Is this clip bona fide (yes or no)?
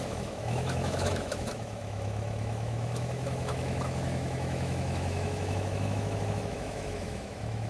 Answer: no